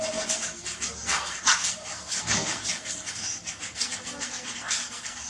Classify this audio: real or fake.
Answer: fake